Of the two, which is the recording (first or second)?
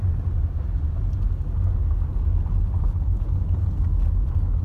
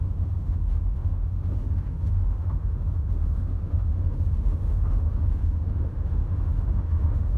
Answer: first